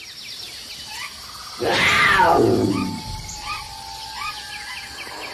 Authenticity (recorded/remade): recorded